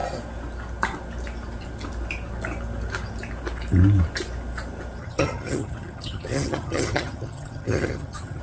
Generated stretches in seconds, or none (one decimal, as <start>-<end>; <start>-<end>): 5.0-8.4